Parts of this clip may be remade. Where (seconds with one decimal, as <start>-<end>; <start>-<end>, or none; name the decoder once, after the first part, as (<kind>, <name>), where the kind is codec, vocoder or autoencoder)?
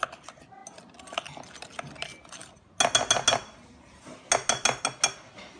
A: none